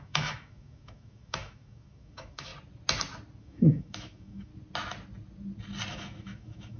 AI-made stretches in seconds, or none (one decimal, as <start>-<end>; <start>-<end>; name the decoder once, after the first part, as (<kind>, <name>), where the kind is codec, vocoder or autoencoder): 0.0-2.5 (autoencoder, DAC-VAE); 3.4-4.5; 5.9-6.8